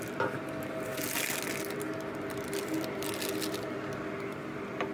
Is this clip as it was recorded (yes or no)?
yes